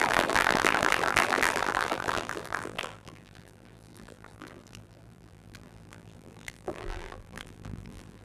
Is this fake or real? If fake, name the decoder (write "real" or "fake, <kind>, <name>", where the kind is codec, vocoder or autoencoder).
fake, vocoder, BigVGAN v2